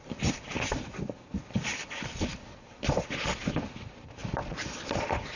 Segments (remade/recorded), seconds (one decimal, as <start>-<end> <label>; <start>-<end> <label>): 0.0-1.7 recorded; 1.7-3.6 remade; 3.6-5.4 recorded